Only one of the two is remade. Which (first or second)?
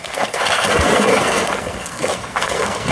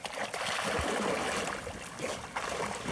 first